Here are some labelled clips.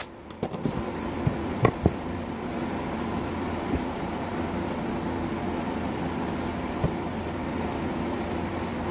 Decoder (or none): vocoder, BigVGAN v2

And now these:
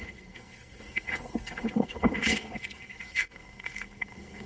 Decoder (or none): codec, SNAC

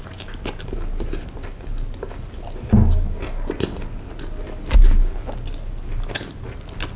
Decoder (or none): none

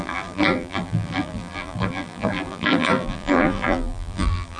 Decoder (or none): vocoder, BigVGAN v2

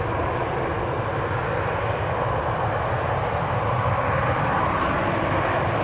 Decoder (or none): none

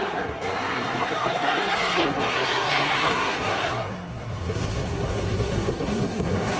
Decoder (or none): codec, SNAC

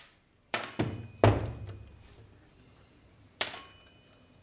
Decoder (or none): vocoder, BigVGAN v2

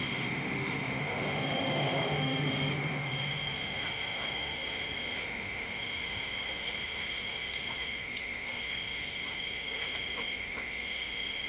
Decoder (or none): autoencoder, DAC-VAE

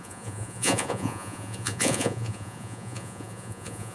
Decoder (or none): vocoder, Vocos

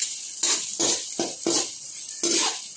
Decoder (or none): none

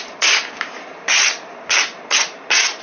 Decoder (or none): none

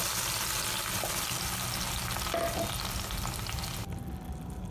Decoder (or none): none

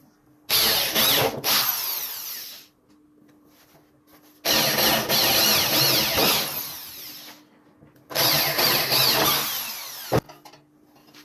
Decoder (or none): none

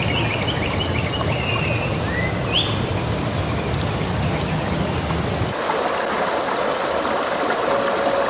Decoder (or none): none